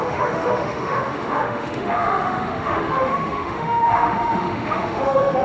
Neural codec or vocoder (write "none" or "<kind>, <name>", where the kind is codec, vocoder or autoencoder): autoencoder, DAC-VAE